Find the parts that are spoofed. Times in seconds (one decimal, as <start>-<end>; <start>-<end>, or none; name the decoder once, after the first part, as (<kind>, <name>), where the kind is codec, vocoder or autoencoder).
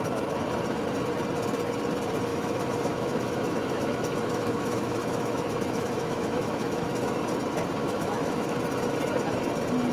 2.3-7.2 (autoencoder, DAC-VAE); 7.8-8.6